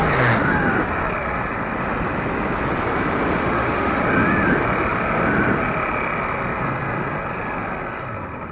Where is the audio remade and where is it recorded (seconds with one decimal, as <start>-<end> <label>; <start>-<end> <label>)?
0.0-3.4 recorded; 3.4-4.0 remade; 4.0-8.5 recorded